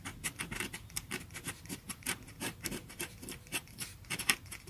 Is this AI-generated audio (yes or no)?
yes